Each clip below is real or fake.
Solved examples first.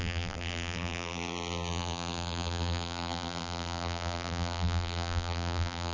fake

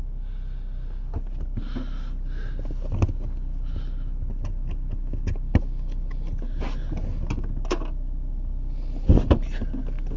real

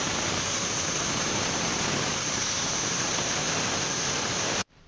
fake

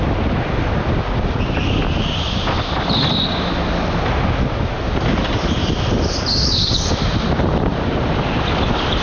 real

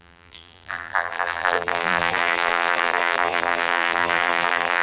fake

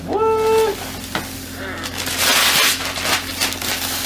real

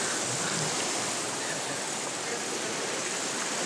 real